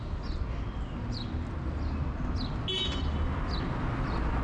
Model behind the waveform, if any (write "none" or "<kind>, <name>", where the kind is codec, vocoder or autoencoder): none